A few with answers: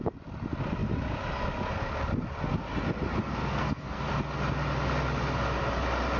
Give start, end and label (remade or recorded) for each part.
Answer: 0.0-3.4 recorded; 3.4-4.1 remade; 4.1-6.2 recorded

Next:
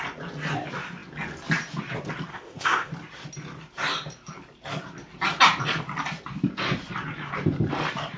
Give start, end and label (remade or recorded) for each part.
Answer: 0.0-2.3 recorded; 2.3-2.9 remade; 2.9-8.2 recorded

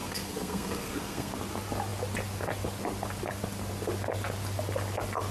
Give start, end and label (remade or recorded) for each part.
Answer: 0.0-1.3 remade; 1.3-5.3 recorded

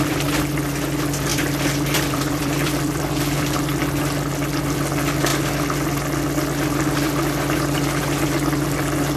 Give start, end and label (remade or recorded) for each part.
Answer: 0.0-1.3 recorded; 1.3-3.8 remade; 3.8-9.2 recorded

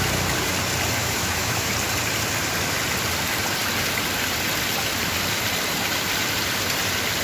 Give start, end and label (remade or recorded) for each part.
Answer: 0.0-1.0 recorded; 1.0-1.7 remade; 1.7-7.2 recorded